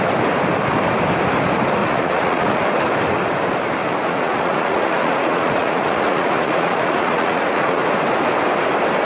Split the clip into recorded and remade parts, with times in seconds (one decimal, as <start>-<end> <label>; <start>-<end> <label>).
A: 0.0-1.8 recorded; 1.8-2.6 remade; 2.6-3.8 recorded; 3.8-7.8 remade; 7.8-9.0 recorded